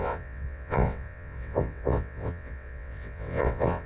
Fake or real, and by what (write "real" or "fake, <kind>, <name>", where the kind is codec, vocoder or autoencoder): fake, vocoder, WaveNeXt